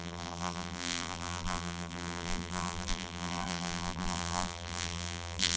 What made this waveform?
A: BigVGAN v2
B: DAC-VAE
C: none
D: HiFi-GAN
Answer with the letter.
A